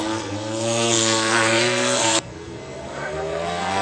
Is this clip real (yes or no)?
no